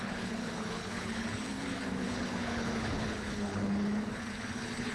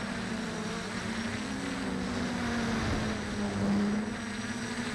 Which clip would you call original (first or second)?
second